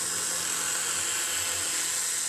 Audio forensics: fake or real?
real